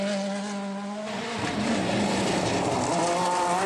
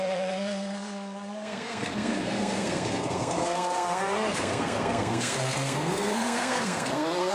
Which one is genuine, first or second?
first